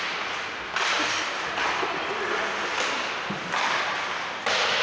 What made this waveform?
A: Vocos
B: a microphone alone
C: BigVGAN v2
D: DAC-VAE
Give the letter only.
B